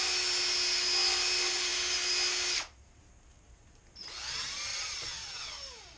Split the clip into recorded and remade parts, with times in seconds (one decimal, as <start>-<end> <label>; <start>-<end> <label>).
0.0-4.7 recorded; 4.7-5.5 remade; 5.5-6.0 recorded